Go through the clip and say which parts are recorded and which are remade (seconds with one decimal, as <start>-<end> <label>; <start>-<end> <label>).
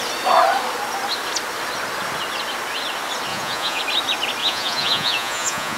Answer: 0.0-3.3 recorded; 3.3-3.8 remade; 3.8-4.4 recorded; 4.4-5.8 remade